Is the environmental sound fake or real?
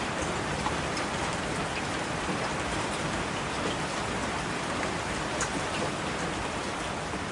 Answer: fake